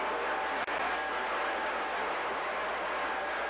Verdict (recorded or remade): recorded